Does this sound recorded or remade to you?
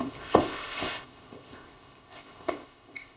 remade